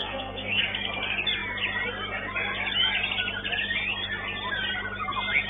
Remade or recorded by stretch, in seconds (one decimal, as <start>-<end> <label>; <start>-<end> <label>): 0.0-0.6 remade; 0.6-5.5 recorded